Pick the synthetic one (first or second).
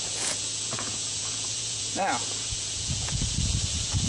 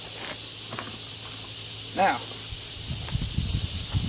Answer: first